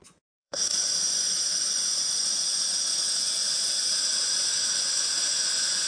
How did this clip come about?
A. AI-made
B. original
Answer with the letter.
A